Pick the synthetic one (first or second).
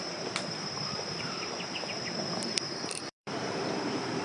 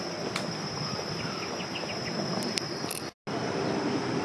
first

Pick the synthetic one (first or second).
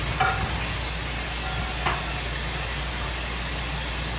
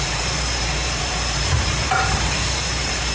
second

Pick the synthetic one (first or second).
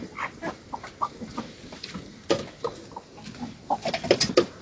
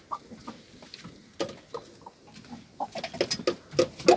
first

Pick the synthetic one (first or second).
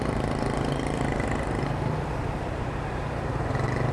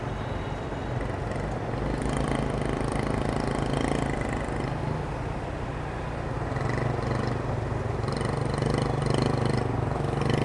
first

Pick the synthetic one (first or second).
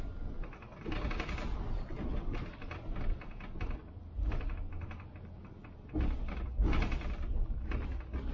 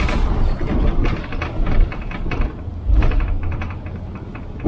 second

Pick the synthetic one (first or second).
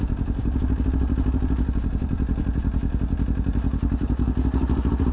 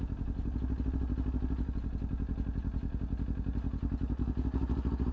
first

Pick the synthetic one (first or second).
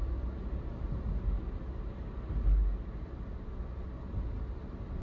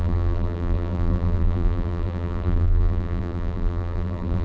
second